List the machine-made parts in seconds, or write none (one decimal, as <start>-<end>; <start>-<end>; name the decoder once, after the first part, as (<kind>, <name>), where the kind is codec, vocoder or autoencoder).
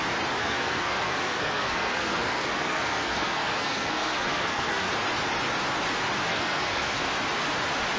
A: 0.4-4.9 (codec, SNAC); 6.3-7.1